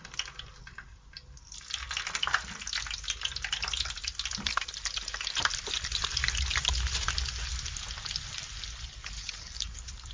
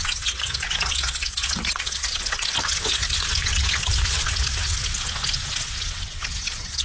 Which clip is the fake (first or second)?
second